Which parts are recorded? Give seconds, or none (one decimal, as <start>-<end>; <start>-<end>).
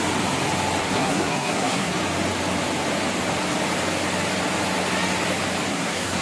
0.0-0.8; 1.9-5.7